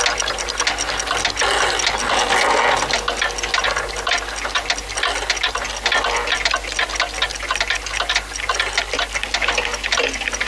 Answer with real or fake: real